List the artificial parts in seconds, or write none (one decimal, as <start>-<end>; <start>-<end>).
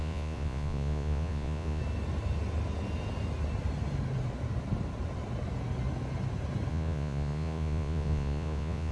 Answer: 0.0-1.8; 6.7-8.9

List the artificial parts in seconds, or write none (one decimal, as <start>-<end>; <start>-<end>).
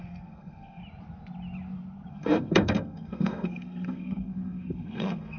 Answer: 0.0-0.8; 2.1-5.4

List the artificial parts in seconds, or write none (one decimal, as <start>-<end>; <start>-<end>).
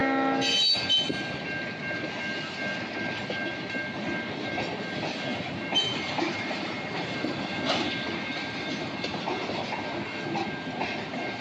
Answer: 5.3-7.8; 8.3-9.2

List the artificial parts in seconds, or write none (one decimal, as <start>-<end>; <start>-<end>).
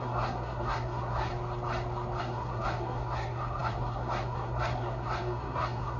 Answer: 0.0-1.3; 2.2-6.0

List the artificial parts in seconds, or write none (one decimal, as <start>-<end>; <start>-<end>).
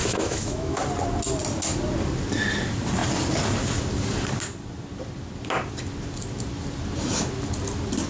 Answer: 0.0-0.8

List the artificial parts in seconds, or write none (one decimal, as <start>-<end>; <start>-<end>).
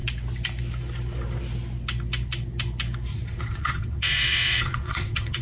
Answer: 3.1-5.4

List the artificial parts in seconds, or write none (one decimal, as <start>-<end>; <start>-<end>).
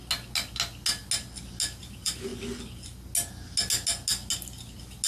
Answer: 1.8-2.3